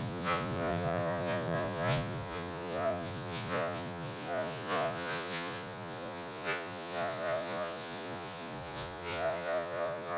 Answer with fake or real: fake